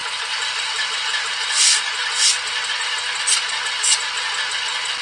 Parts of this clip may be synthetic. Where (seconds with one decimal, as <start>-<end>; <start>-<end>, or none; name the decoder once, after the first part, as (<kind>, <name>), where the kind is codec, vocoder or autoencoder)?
none